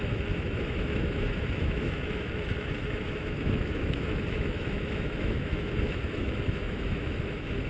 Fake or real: fake